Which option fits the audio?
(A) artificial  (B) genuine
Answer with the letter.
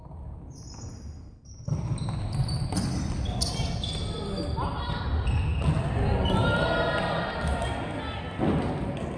B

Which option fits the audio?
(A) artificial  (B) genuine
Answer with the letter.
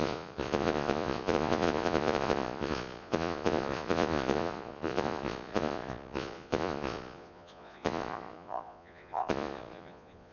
A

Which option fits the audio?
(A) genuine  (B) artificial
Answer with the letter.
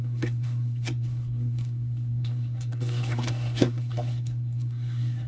B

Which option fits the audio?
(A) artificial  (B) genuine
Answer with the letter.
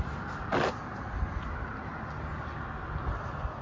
B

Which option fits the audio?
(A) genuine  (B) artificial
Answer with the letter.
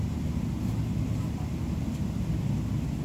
A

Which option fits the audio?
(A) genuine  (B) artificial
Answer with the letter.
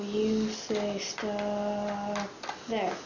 A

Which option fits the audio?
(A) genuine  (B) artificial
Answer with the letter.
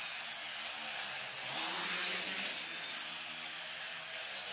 A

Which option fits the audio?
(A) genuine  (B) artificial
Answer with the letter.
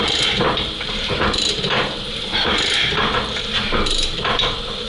B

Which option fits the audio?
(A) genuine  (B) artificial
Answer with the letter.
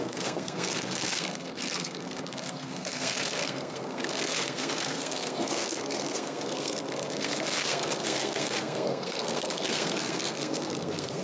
B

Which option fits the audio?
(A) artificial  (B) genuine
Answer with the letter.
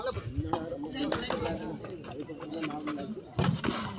B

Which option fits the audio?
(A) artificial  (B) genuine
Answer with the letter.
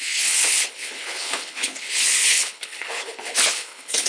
A